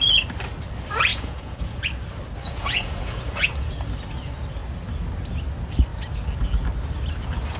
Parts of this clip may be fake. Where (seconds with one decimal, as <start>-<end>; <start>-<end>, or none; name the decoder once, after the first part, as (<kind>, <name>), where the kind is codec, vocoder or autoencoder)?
1.1-1.8 (vocoder, Vocos); 2.4-3.8